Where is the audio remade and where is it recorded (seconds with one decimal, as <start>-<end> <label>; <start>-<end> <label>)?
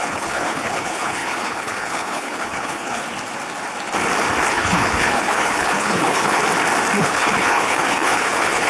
0.0-3.0 remade; 3.0-4.5 recorded; 4.5-6.4 remade; 6.4-7.0 recorded; 7.0-8.7 remade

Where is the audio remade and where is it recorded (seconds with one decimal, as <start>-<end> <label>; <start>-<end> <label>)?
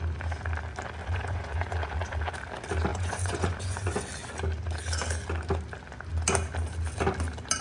0.0-1.0 recorded; 1.0-2.3 remade; 2.3-2.9 recorded; 2.9-4.0 remade; 4.0-7.6 recorded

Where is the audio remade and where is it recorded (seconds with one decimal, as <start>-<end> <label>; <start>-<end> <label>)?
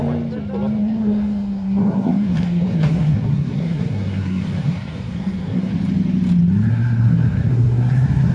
0.0-0.8 recorded; 0.8-5.7 remade; 5.7-6.7 recorded; 6.7-8.3 remade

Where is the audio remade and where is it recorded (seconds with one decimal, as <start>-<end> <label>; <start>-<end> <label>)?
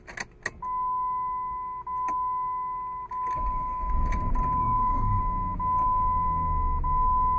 0.0-4.6 recorded; 4.6-5.2 remade; 5.2-7.4 recorded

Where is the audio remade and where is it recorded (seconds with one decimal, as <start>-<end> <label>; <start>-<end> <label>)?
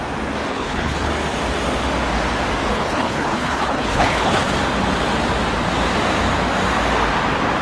0.0-0.5 recorded; 0.5-1.1 remade; 1.1-2.7 recorded; 2.7-4.5 remade; 4.5-7.6 recorded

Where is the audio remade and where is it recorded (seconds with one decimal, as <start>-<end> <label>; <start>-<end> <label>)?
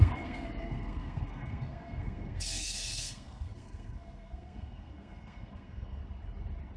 0.0-6.0 remade; 6.0-6.8 recorded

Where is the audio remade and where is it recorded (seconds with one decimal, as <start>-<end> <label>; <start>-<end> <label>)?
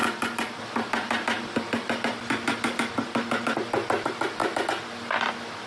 0.0-5.7 recorded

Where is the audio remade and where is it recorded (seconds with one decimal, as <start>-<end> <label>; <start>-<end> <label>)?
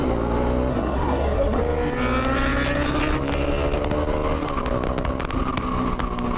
0.0-0.7 recorded; 0.7-1.6 remade; 1.6-6.4 recorded